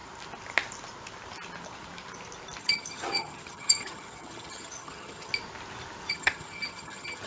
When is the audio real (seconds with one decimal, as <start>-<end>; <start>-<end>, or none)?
0.0-2.6; 5.3-6.1